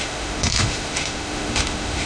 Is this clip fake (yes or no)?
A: yes